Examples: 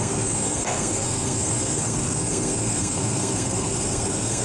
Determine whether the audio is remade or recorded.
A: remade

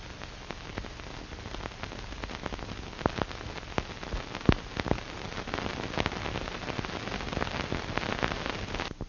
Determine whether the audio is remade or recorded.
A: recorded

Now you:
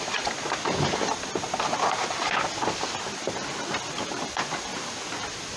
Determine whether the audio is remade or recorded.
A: recorded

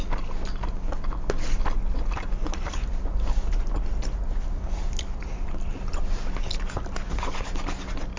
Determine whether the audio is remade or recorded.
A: recorded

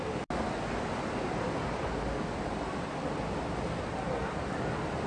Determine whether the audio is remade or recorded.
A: recorded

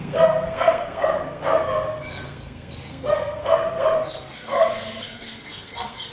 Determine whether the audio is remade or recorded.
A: remade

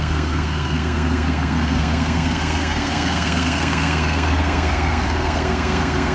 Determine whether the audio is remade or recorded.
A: remade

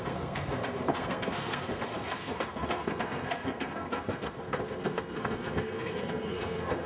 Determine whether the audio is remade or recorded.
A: remade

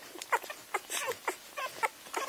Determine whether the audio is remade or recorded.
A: recorded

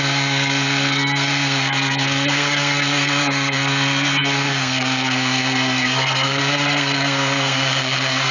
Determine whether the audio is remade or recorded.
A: remade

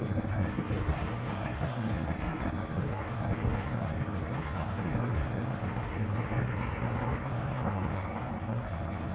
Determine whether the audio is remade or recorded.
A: remade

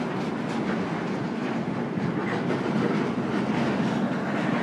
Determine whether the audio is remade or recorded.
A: recorded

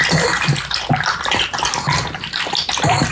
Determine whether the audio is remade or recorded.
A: recorded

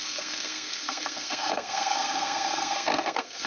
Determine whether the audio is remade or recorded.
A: remade